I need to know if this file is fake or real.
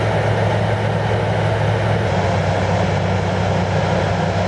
real